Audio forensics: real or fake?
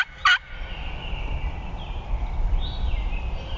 real